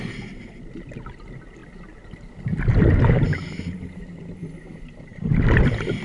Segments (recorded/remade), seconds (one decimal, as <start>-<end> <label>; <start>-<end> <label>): 0.0-1.6 recorded; 1.6-2.9 remade; 2.9-6.0 recorded